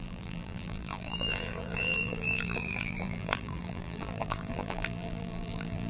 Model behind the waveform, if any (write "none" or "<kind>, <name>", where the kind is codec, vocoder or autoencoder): vocoder, BigVGAN v2